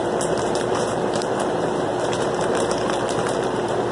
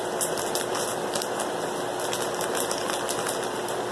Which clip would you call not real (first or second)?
first